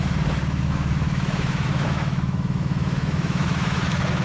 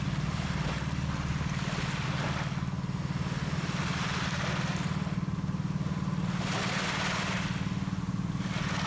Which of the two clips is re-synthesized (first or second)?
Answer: first